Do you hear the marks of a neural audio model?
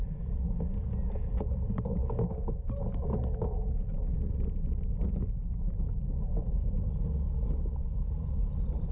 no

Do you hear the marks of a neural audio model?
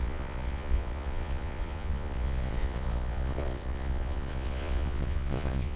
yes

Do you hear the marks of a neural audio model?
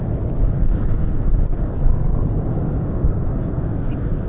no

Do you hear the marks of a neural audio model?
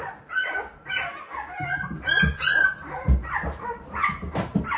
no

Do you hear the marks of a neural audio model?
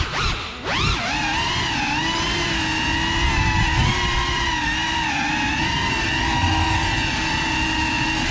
no